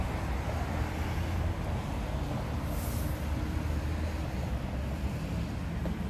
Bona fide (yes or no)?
yes